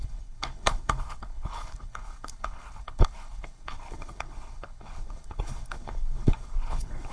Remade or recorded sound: remade